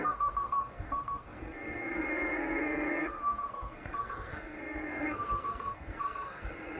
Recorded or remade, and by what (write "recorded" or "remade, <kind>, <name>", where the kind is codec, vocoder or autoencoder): remade, codec, SNAC